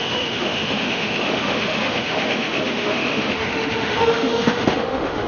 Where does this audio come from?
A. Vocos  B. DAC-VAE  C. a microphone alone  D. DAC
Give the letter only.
B